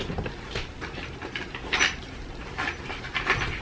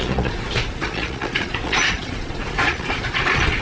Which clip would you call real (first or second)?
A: first